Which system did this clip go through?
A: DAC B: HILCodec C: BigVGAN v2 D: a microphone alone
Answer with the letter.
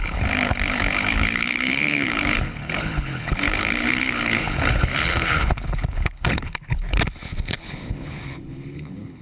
B